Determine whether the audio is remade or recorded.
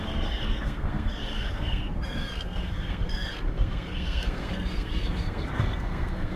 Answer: remade